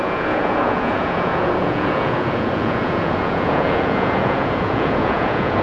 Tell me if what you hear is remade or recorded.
remade